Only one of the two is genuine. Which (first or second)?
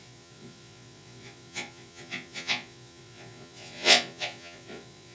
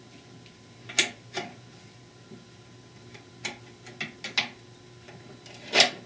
second